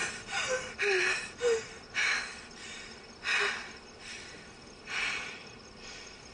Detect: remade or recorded remade